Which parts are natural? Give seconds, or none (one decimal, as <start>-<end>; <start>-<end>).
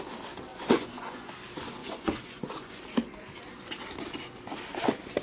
0.0-0.5; 1.3-1.8; 2.8-5.2